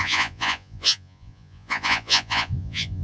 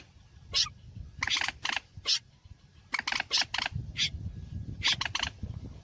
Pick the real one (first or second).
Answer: second